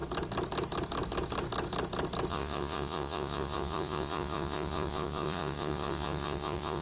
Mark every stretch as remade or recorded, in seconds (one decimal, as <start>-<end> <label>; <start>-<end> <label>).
0.0-2.3 recorded; 2.3-6.8 remade